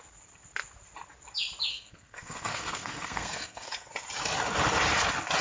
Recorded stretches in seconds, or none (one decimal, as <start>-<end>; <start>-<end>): 0.0-1.7; 3.9-5.4